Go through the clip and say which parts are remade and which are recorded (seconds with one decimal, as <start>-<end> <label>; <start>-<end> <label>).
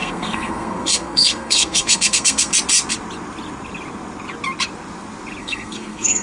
0.0-2.5 remade; 2.5-5.4 recorded; 5.4-6.2 remade